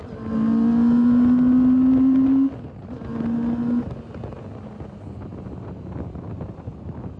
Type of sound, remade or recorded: recorded